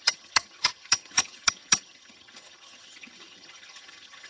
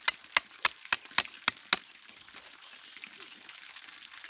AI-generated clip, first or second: first